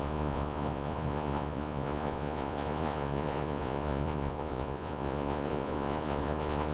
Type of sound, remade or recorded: remade